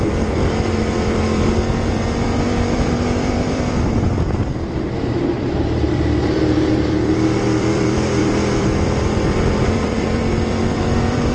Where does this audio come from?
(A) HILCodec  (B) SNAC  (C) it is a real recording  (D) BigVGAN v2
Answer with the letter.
D